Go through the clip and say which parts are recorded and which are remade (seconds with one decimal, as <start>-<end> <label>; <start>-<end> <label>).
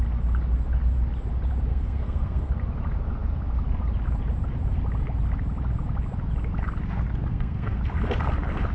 0.0-1.7 recorded; 1.7-2.5 remade; 2.5-7.3 recorded; 7.3-7.8 remade; 7.8-8.7 recorded